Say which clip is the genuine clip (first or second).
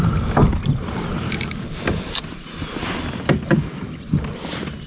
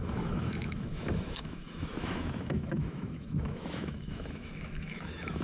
first